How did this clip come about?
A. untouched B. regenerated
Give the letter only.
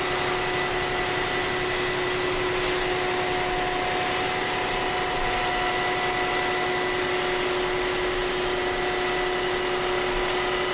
A